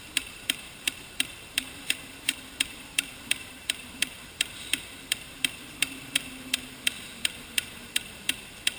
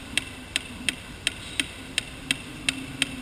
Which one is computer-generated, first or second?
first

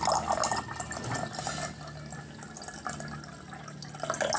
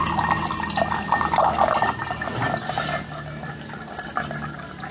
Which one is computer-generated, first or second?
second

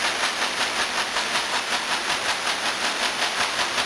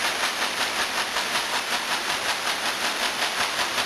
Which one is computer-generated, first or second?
second